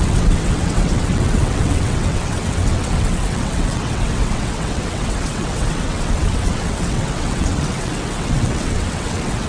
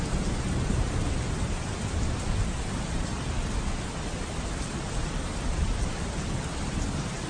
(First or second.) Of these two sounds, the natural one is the second